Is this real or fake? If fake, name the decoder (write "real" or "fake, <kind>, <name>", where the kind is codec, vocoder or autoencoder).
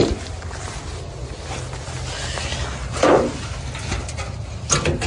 real